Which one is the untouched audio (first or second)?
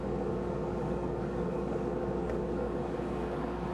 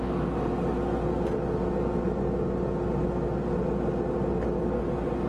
second